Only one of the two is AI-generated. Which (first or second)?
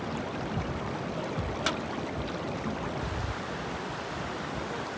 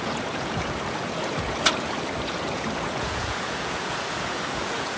second